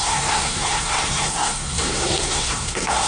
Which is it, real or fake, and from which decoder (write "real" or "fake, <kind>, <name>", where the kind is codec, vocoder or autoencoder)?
fake, codec, SNAC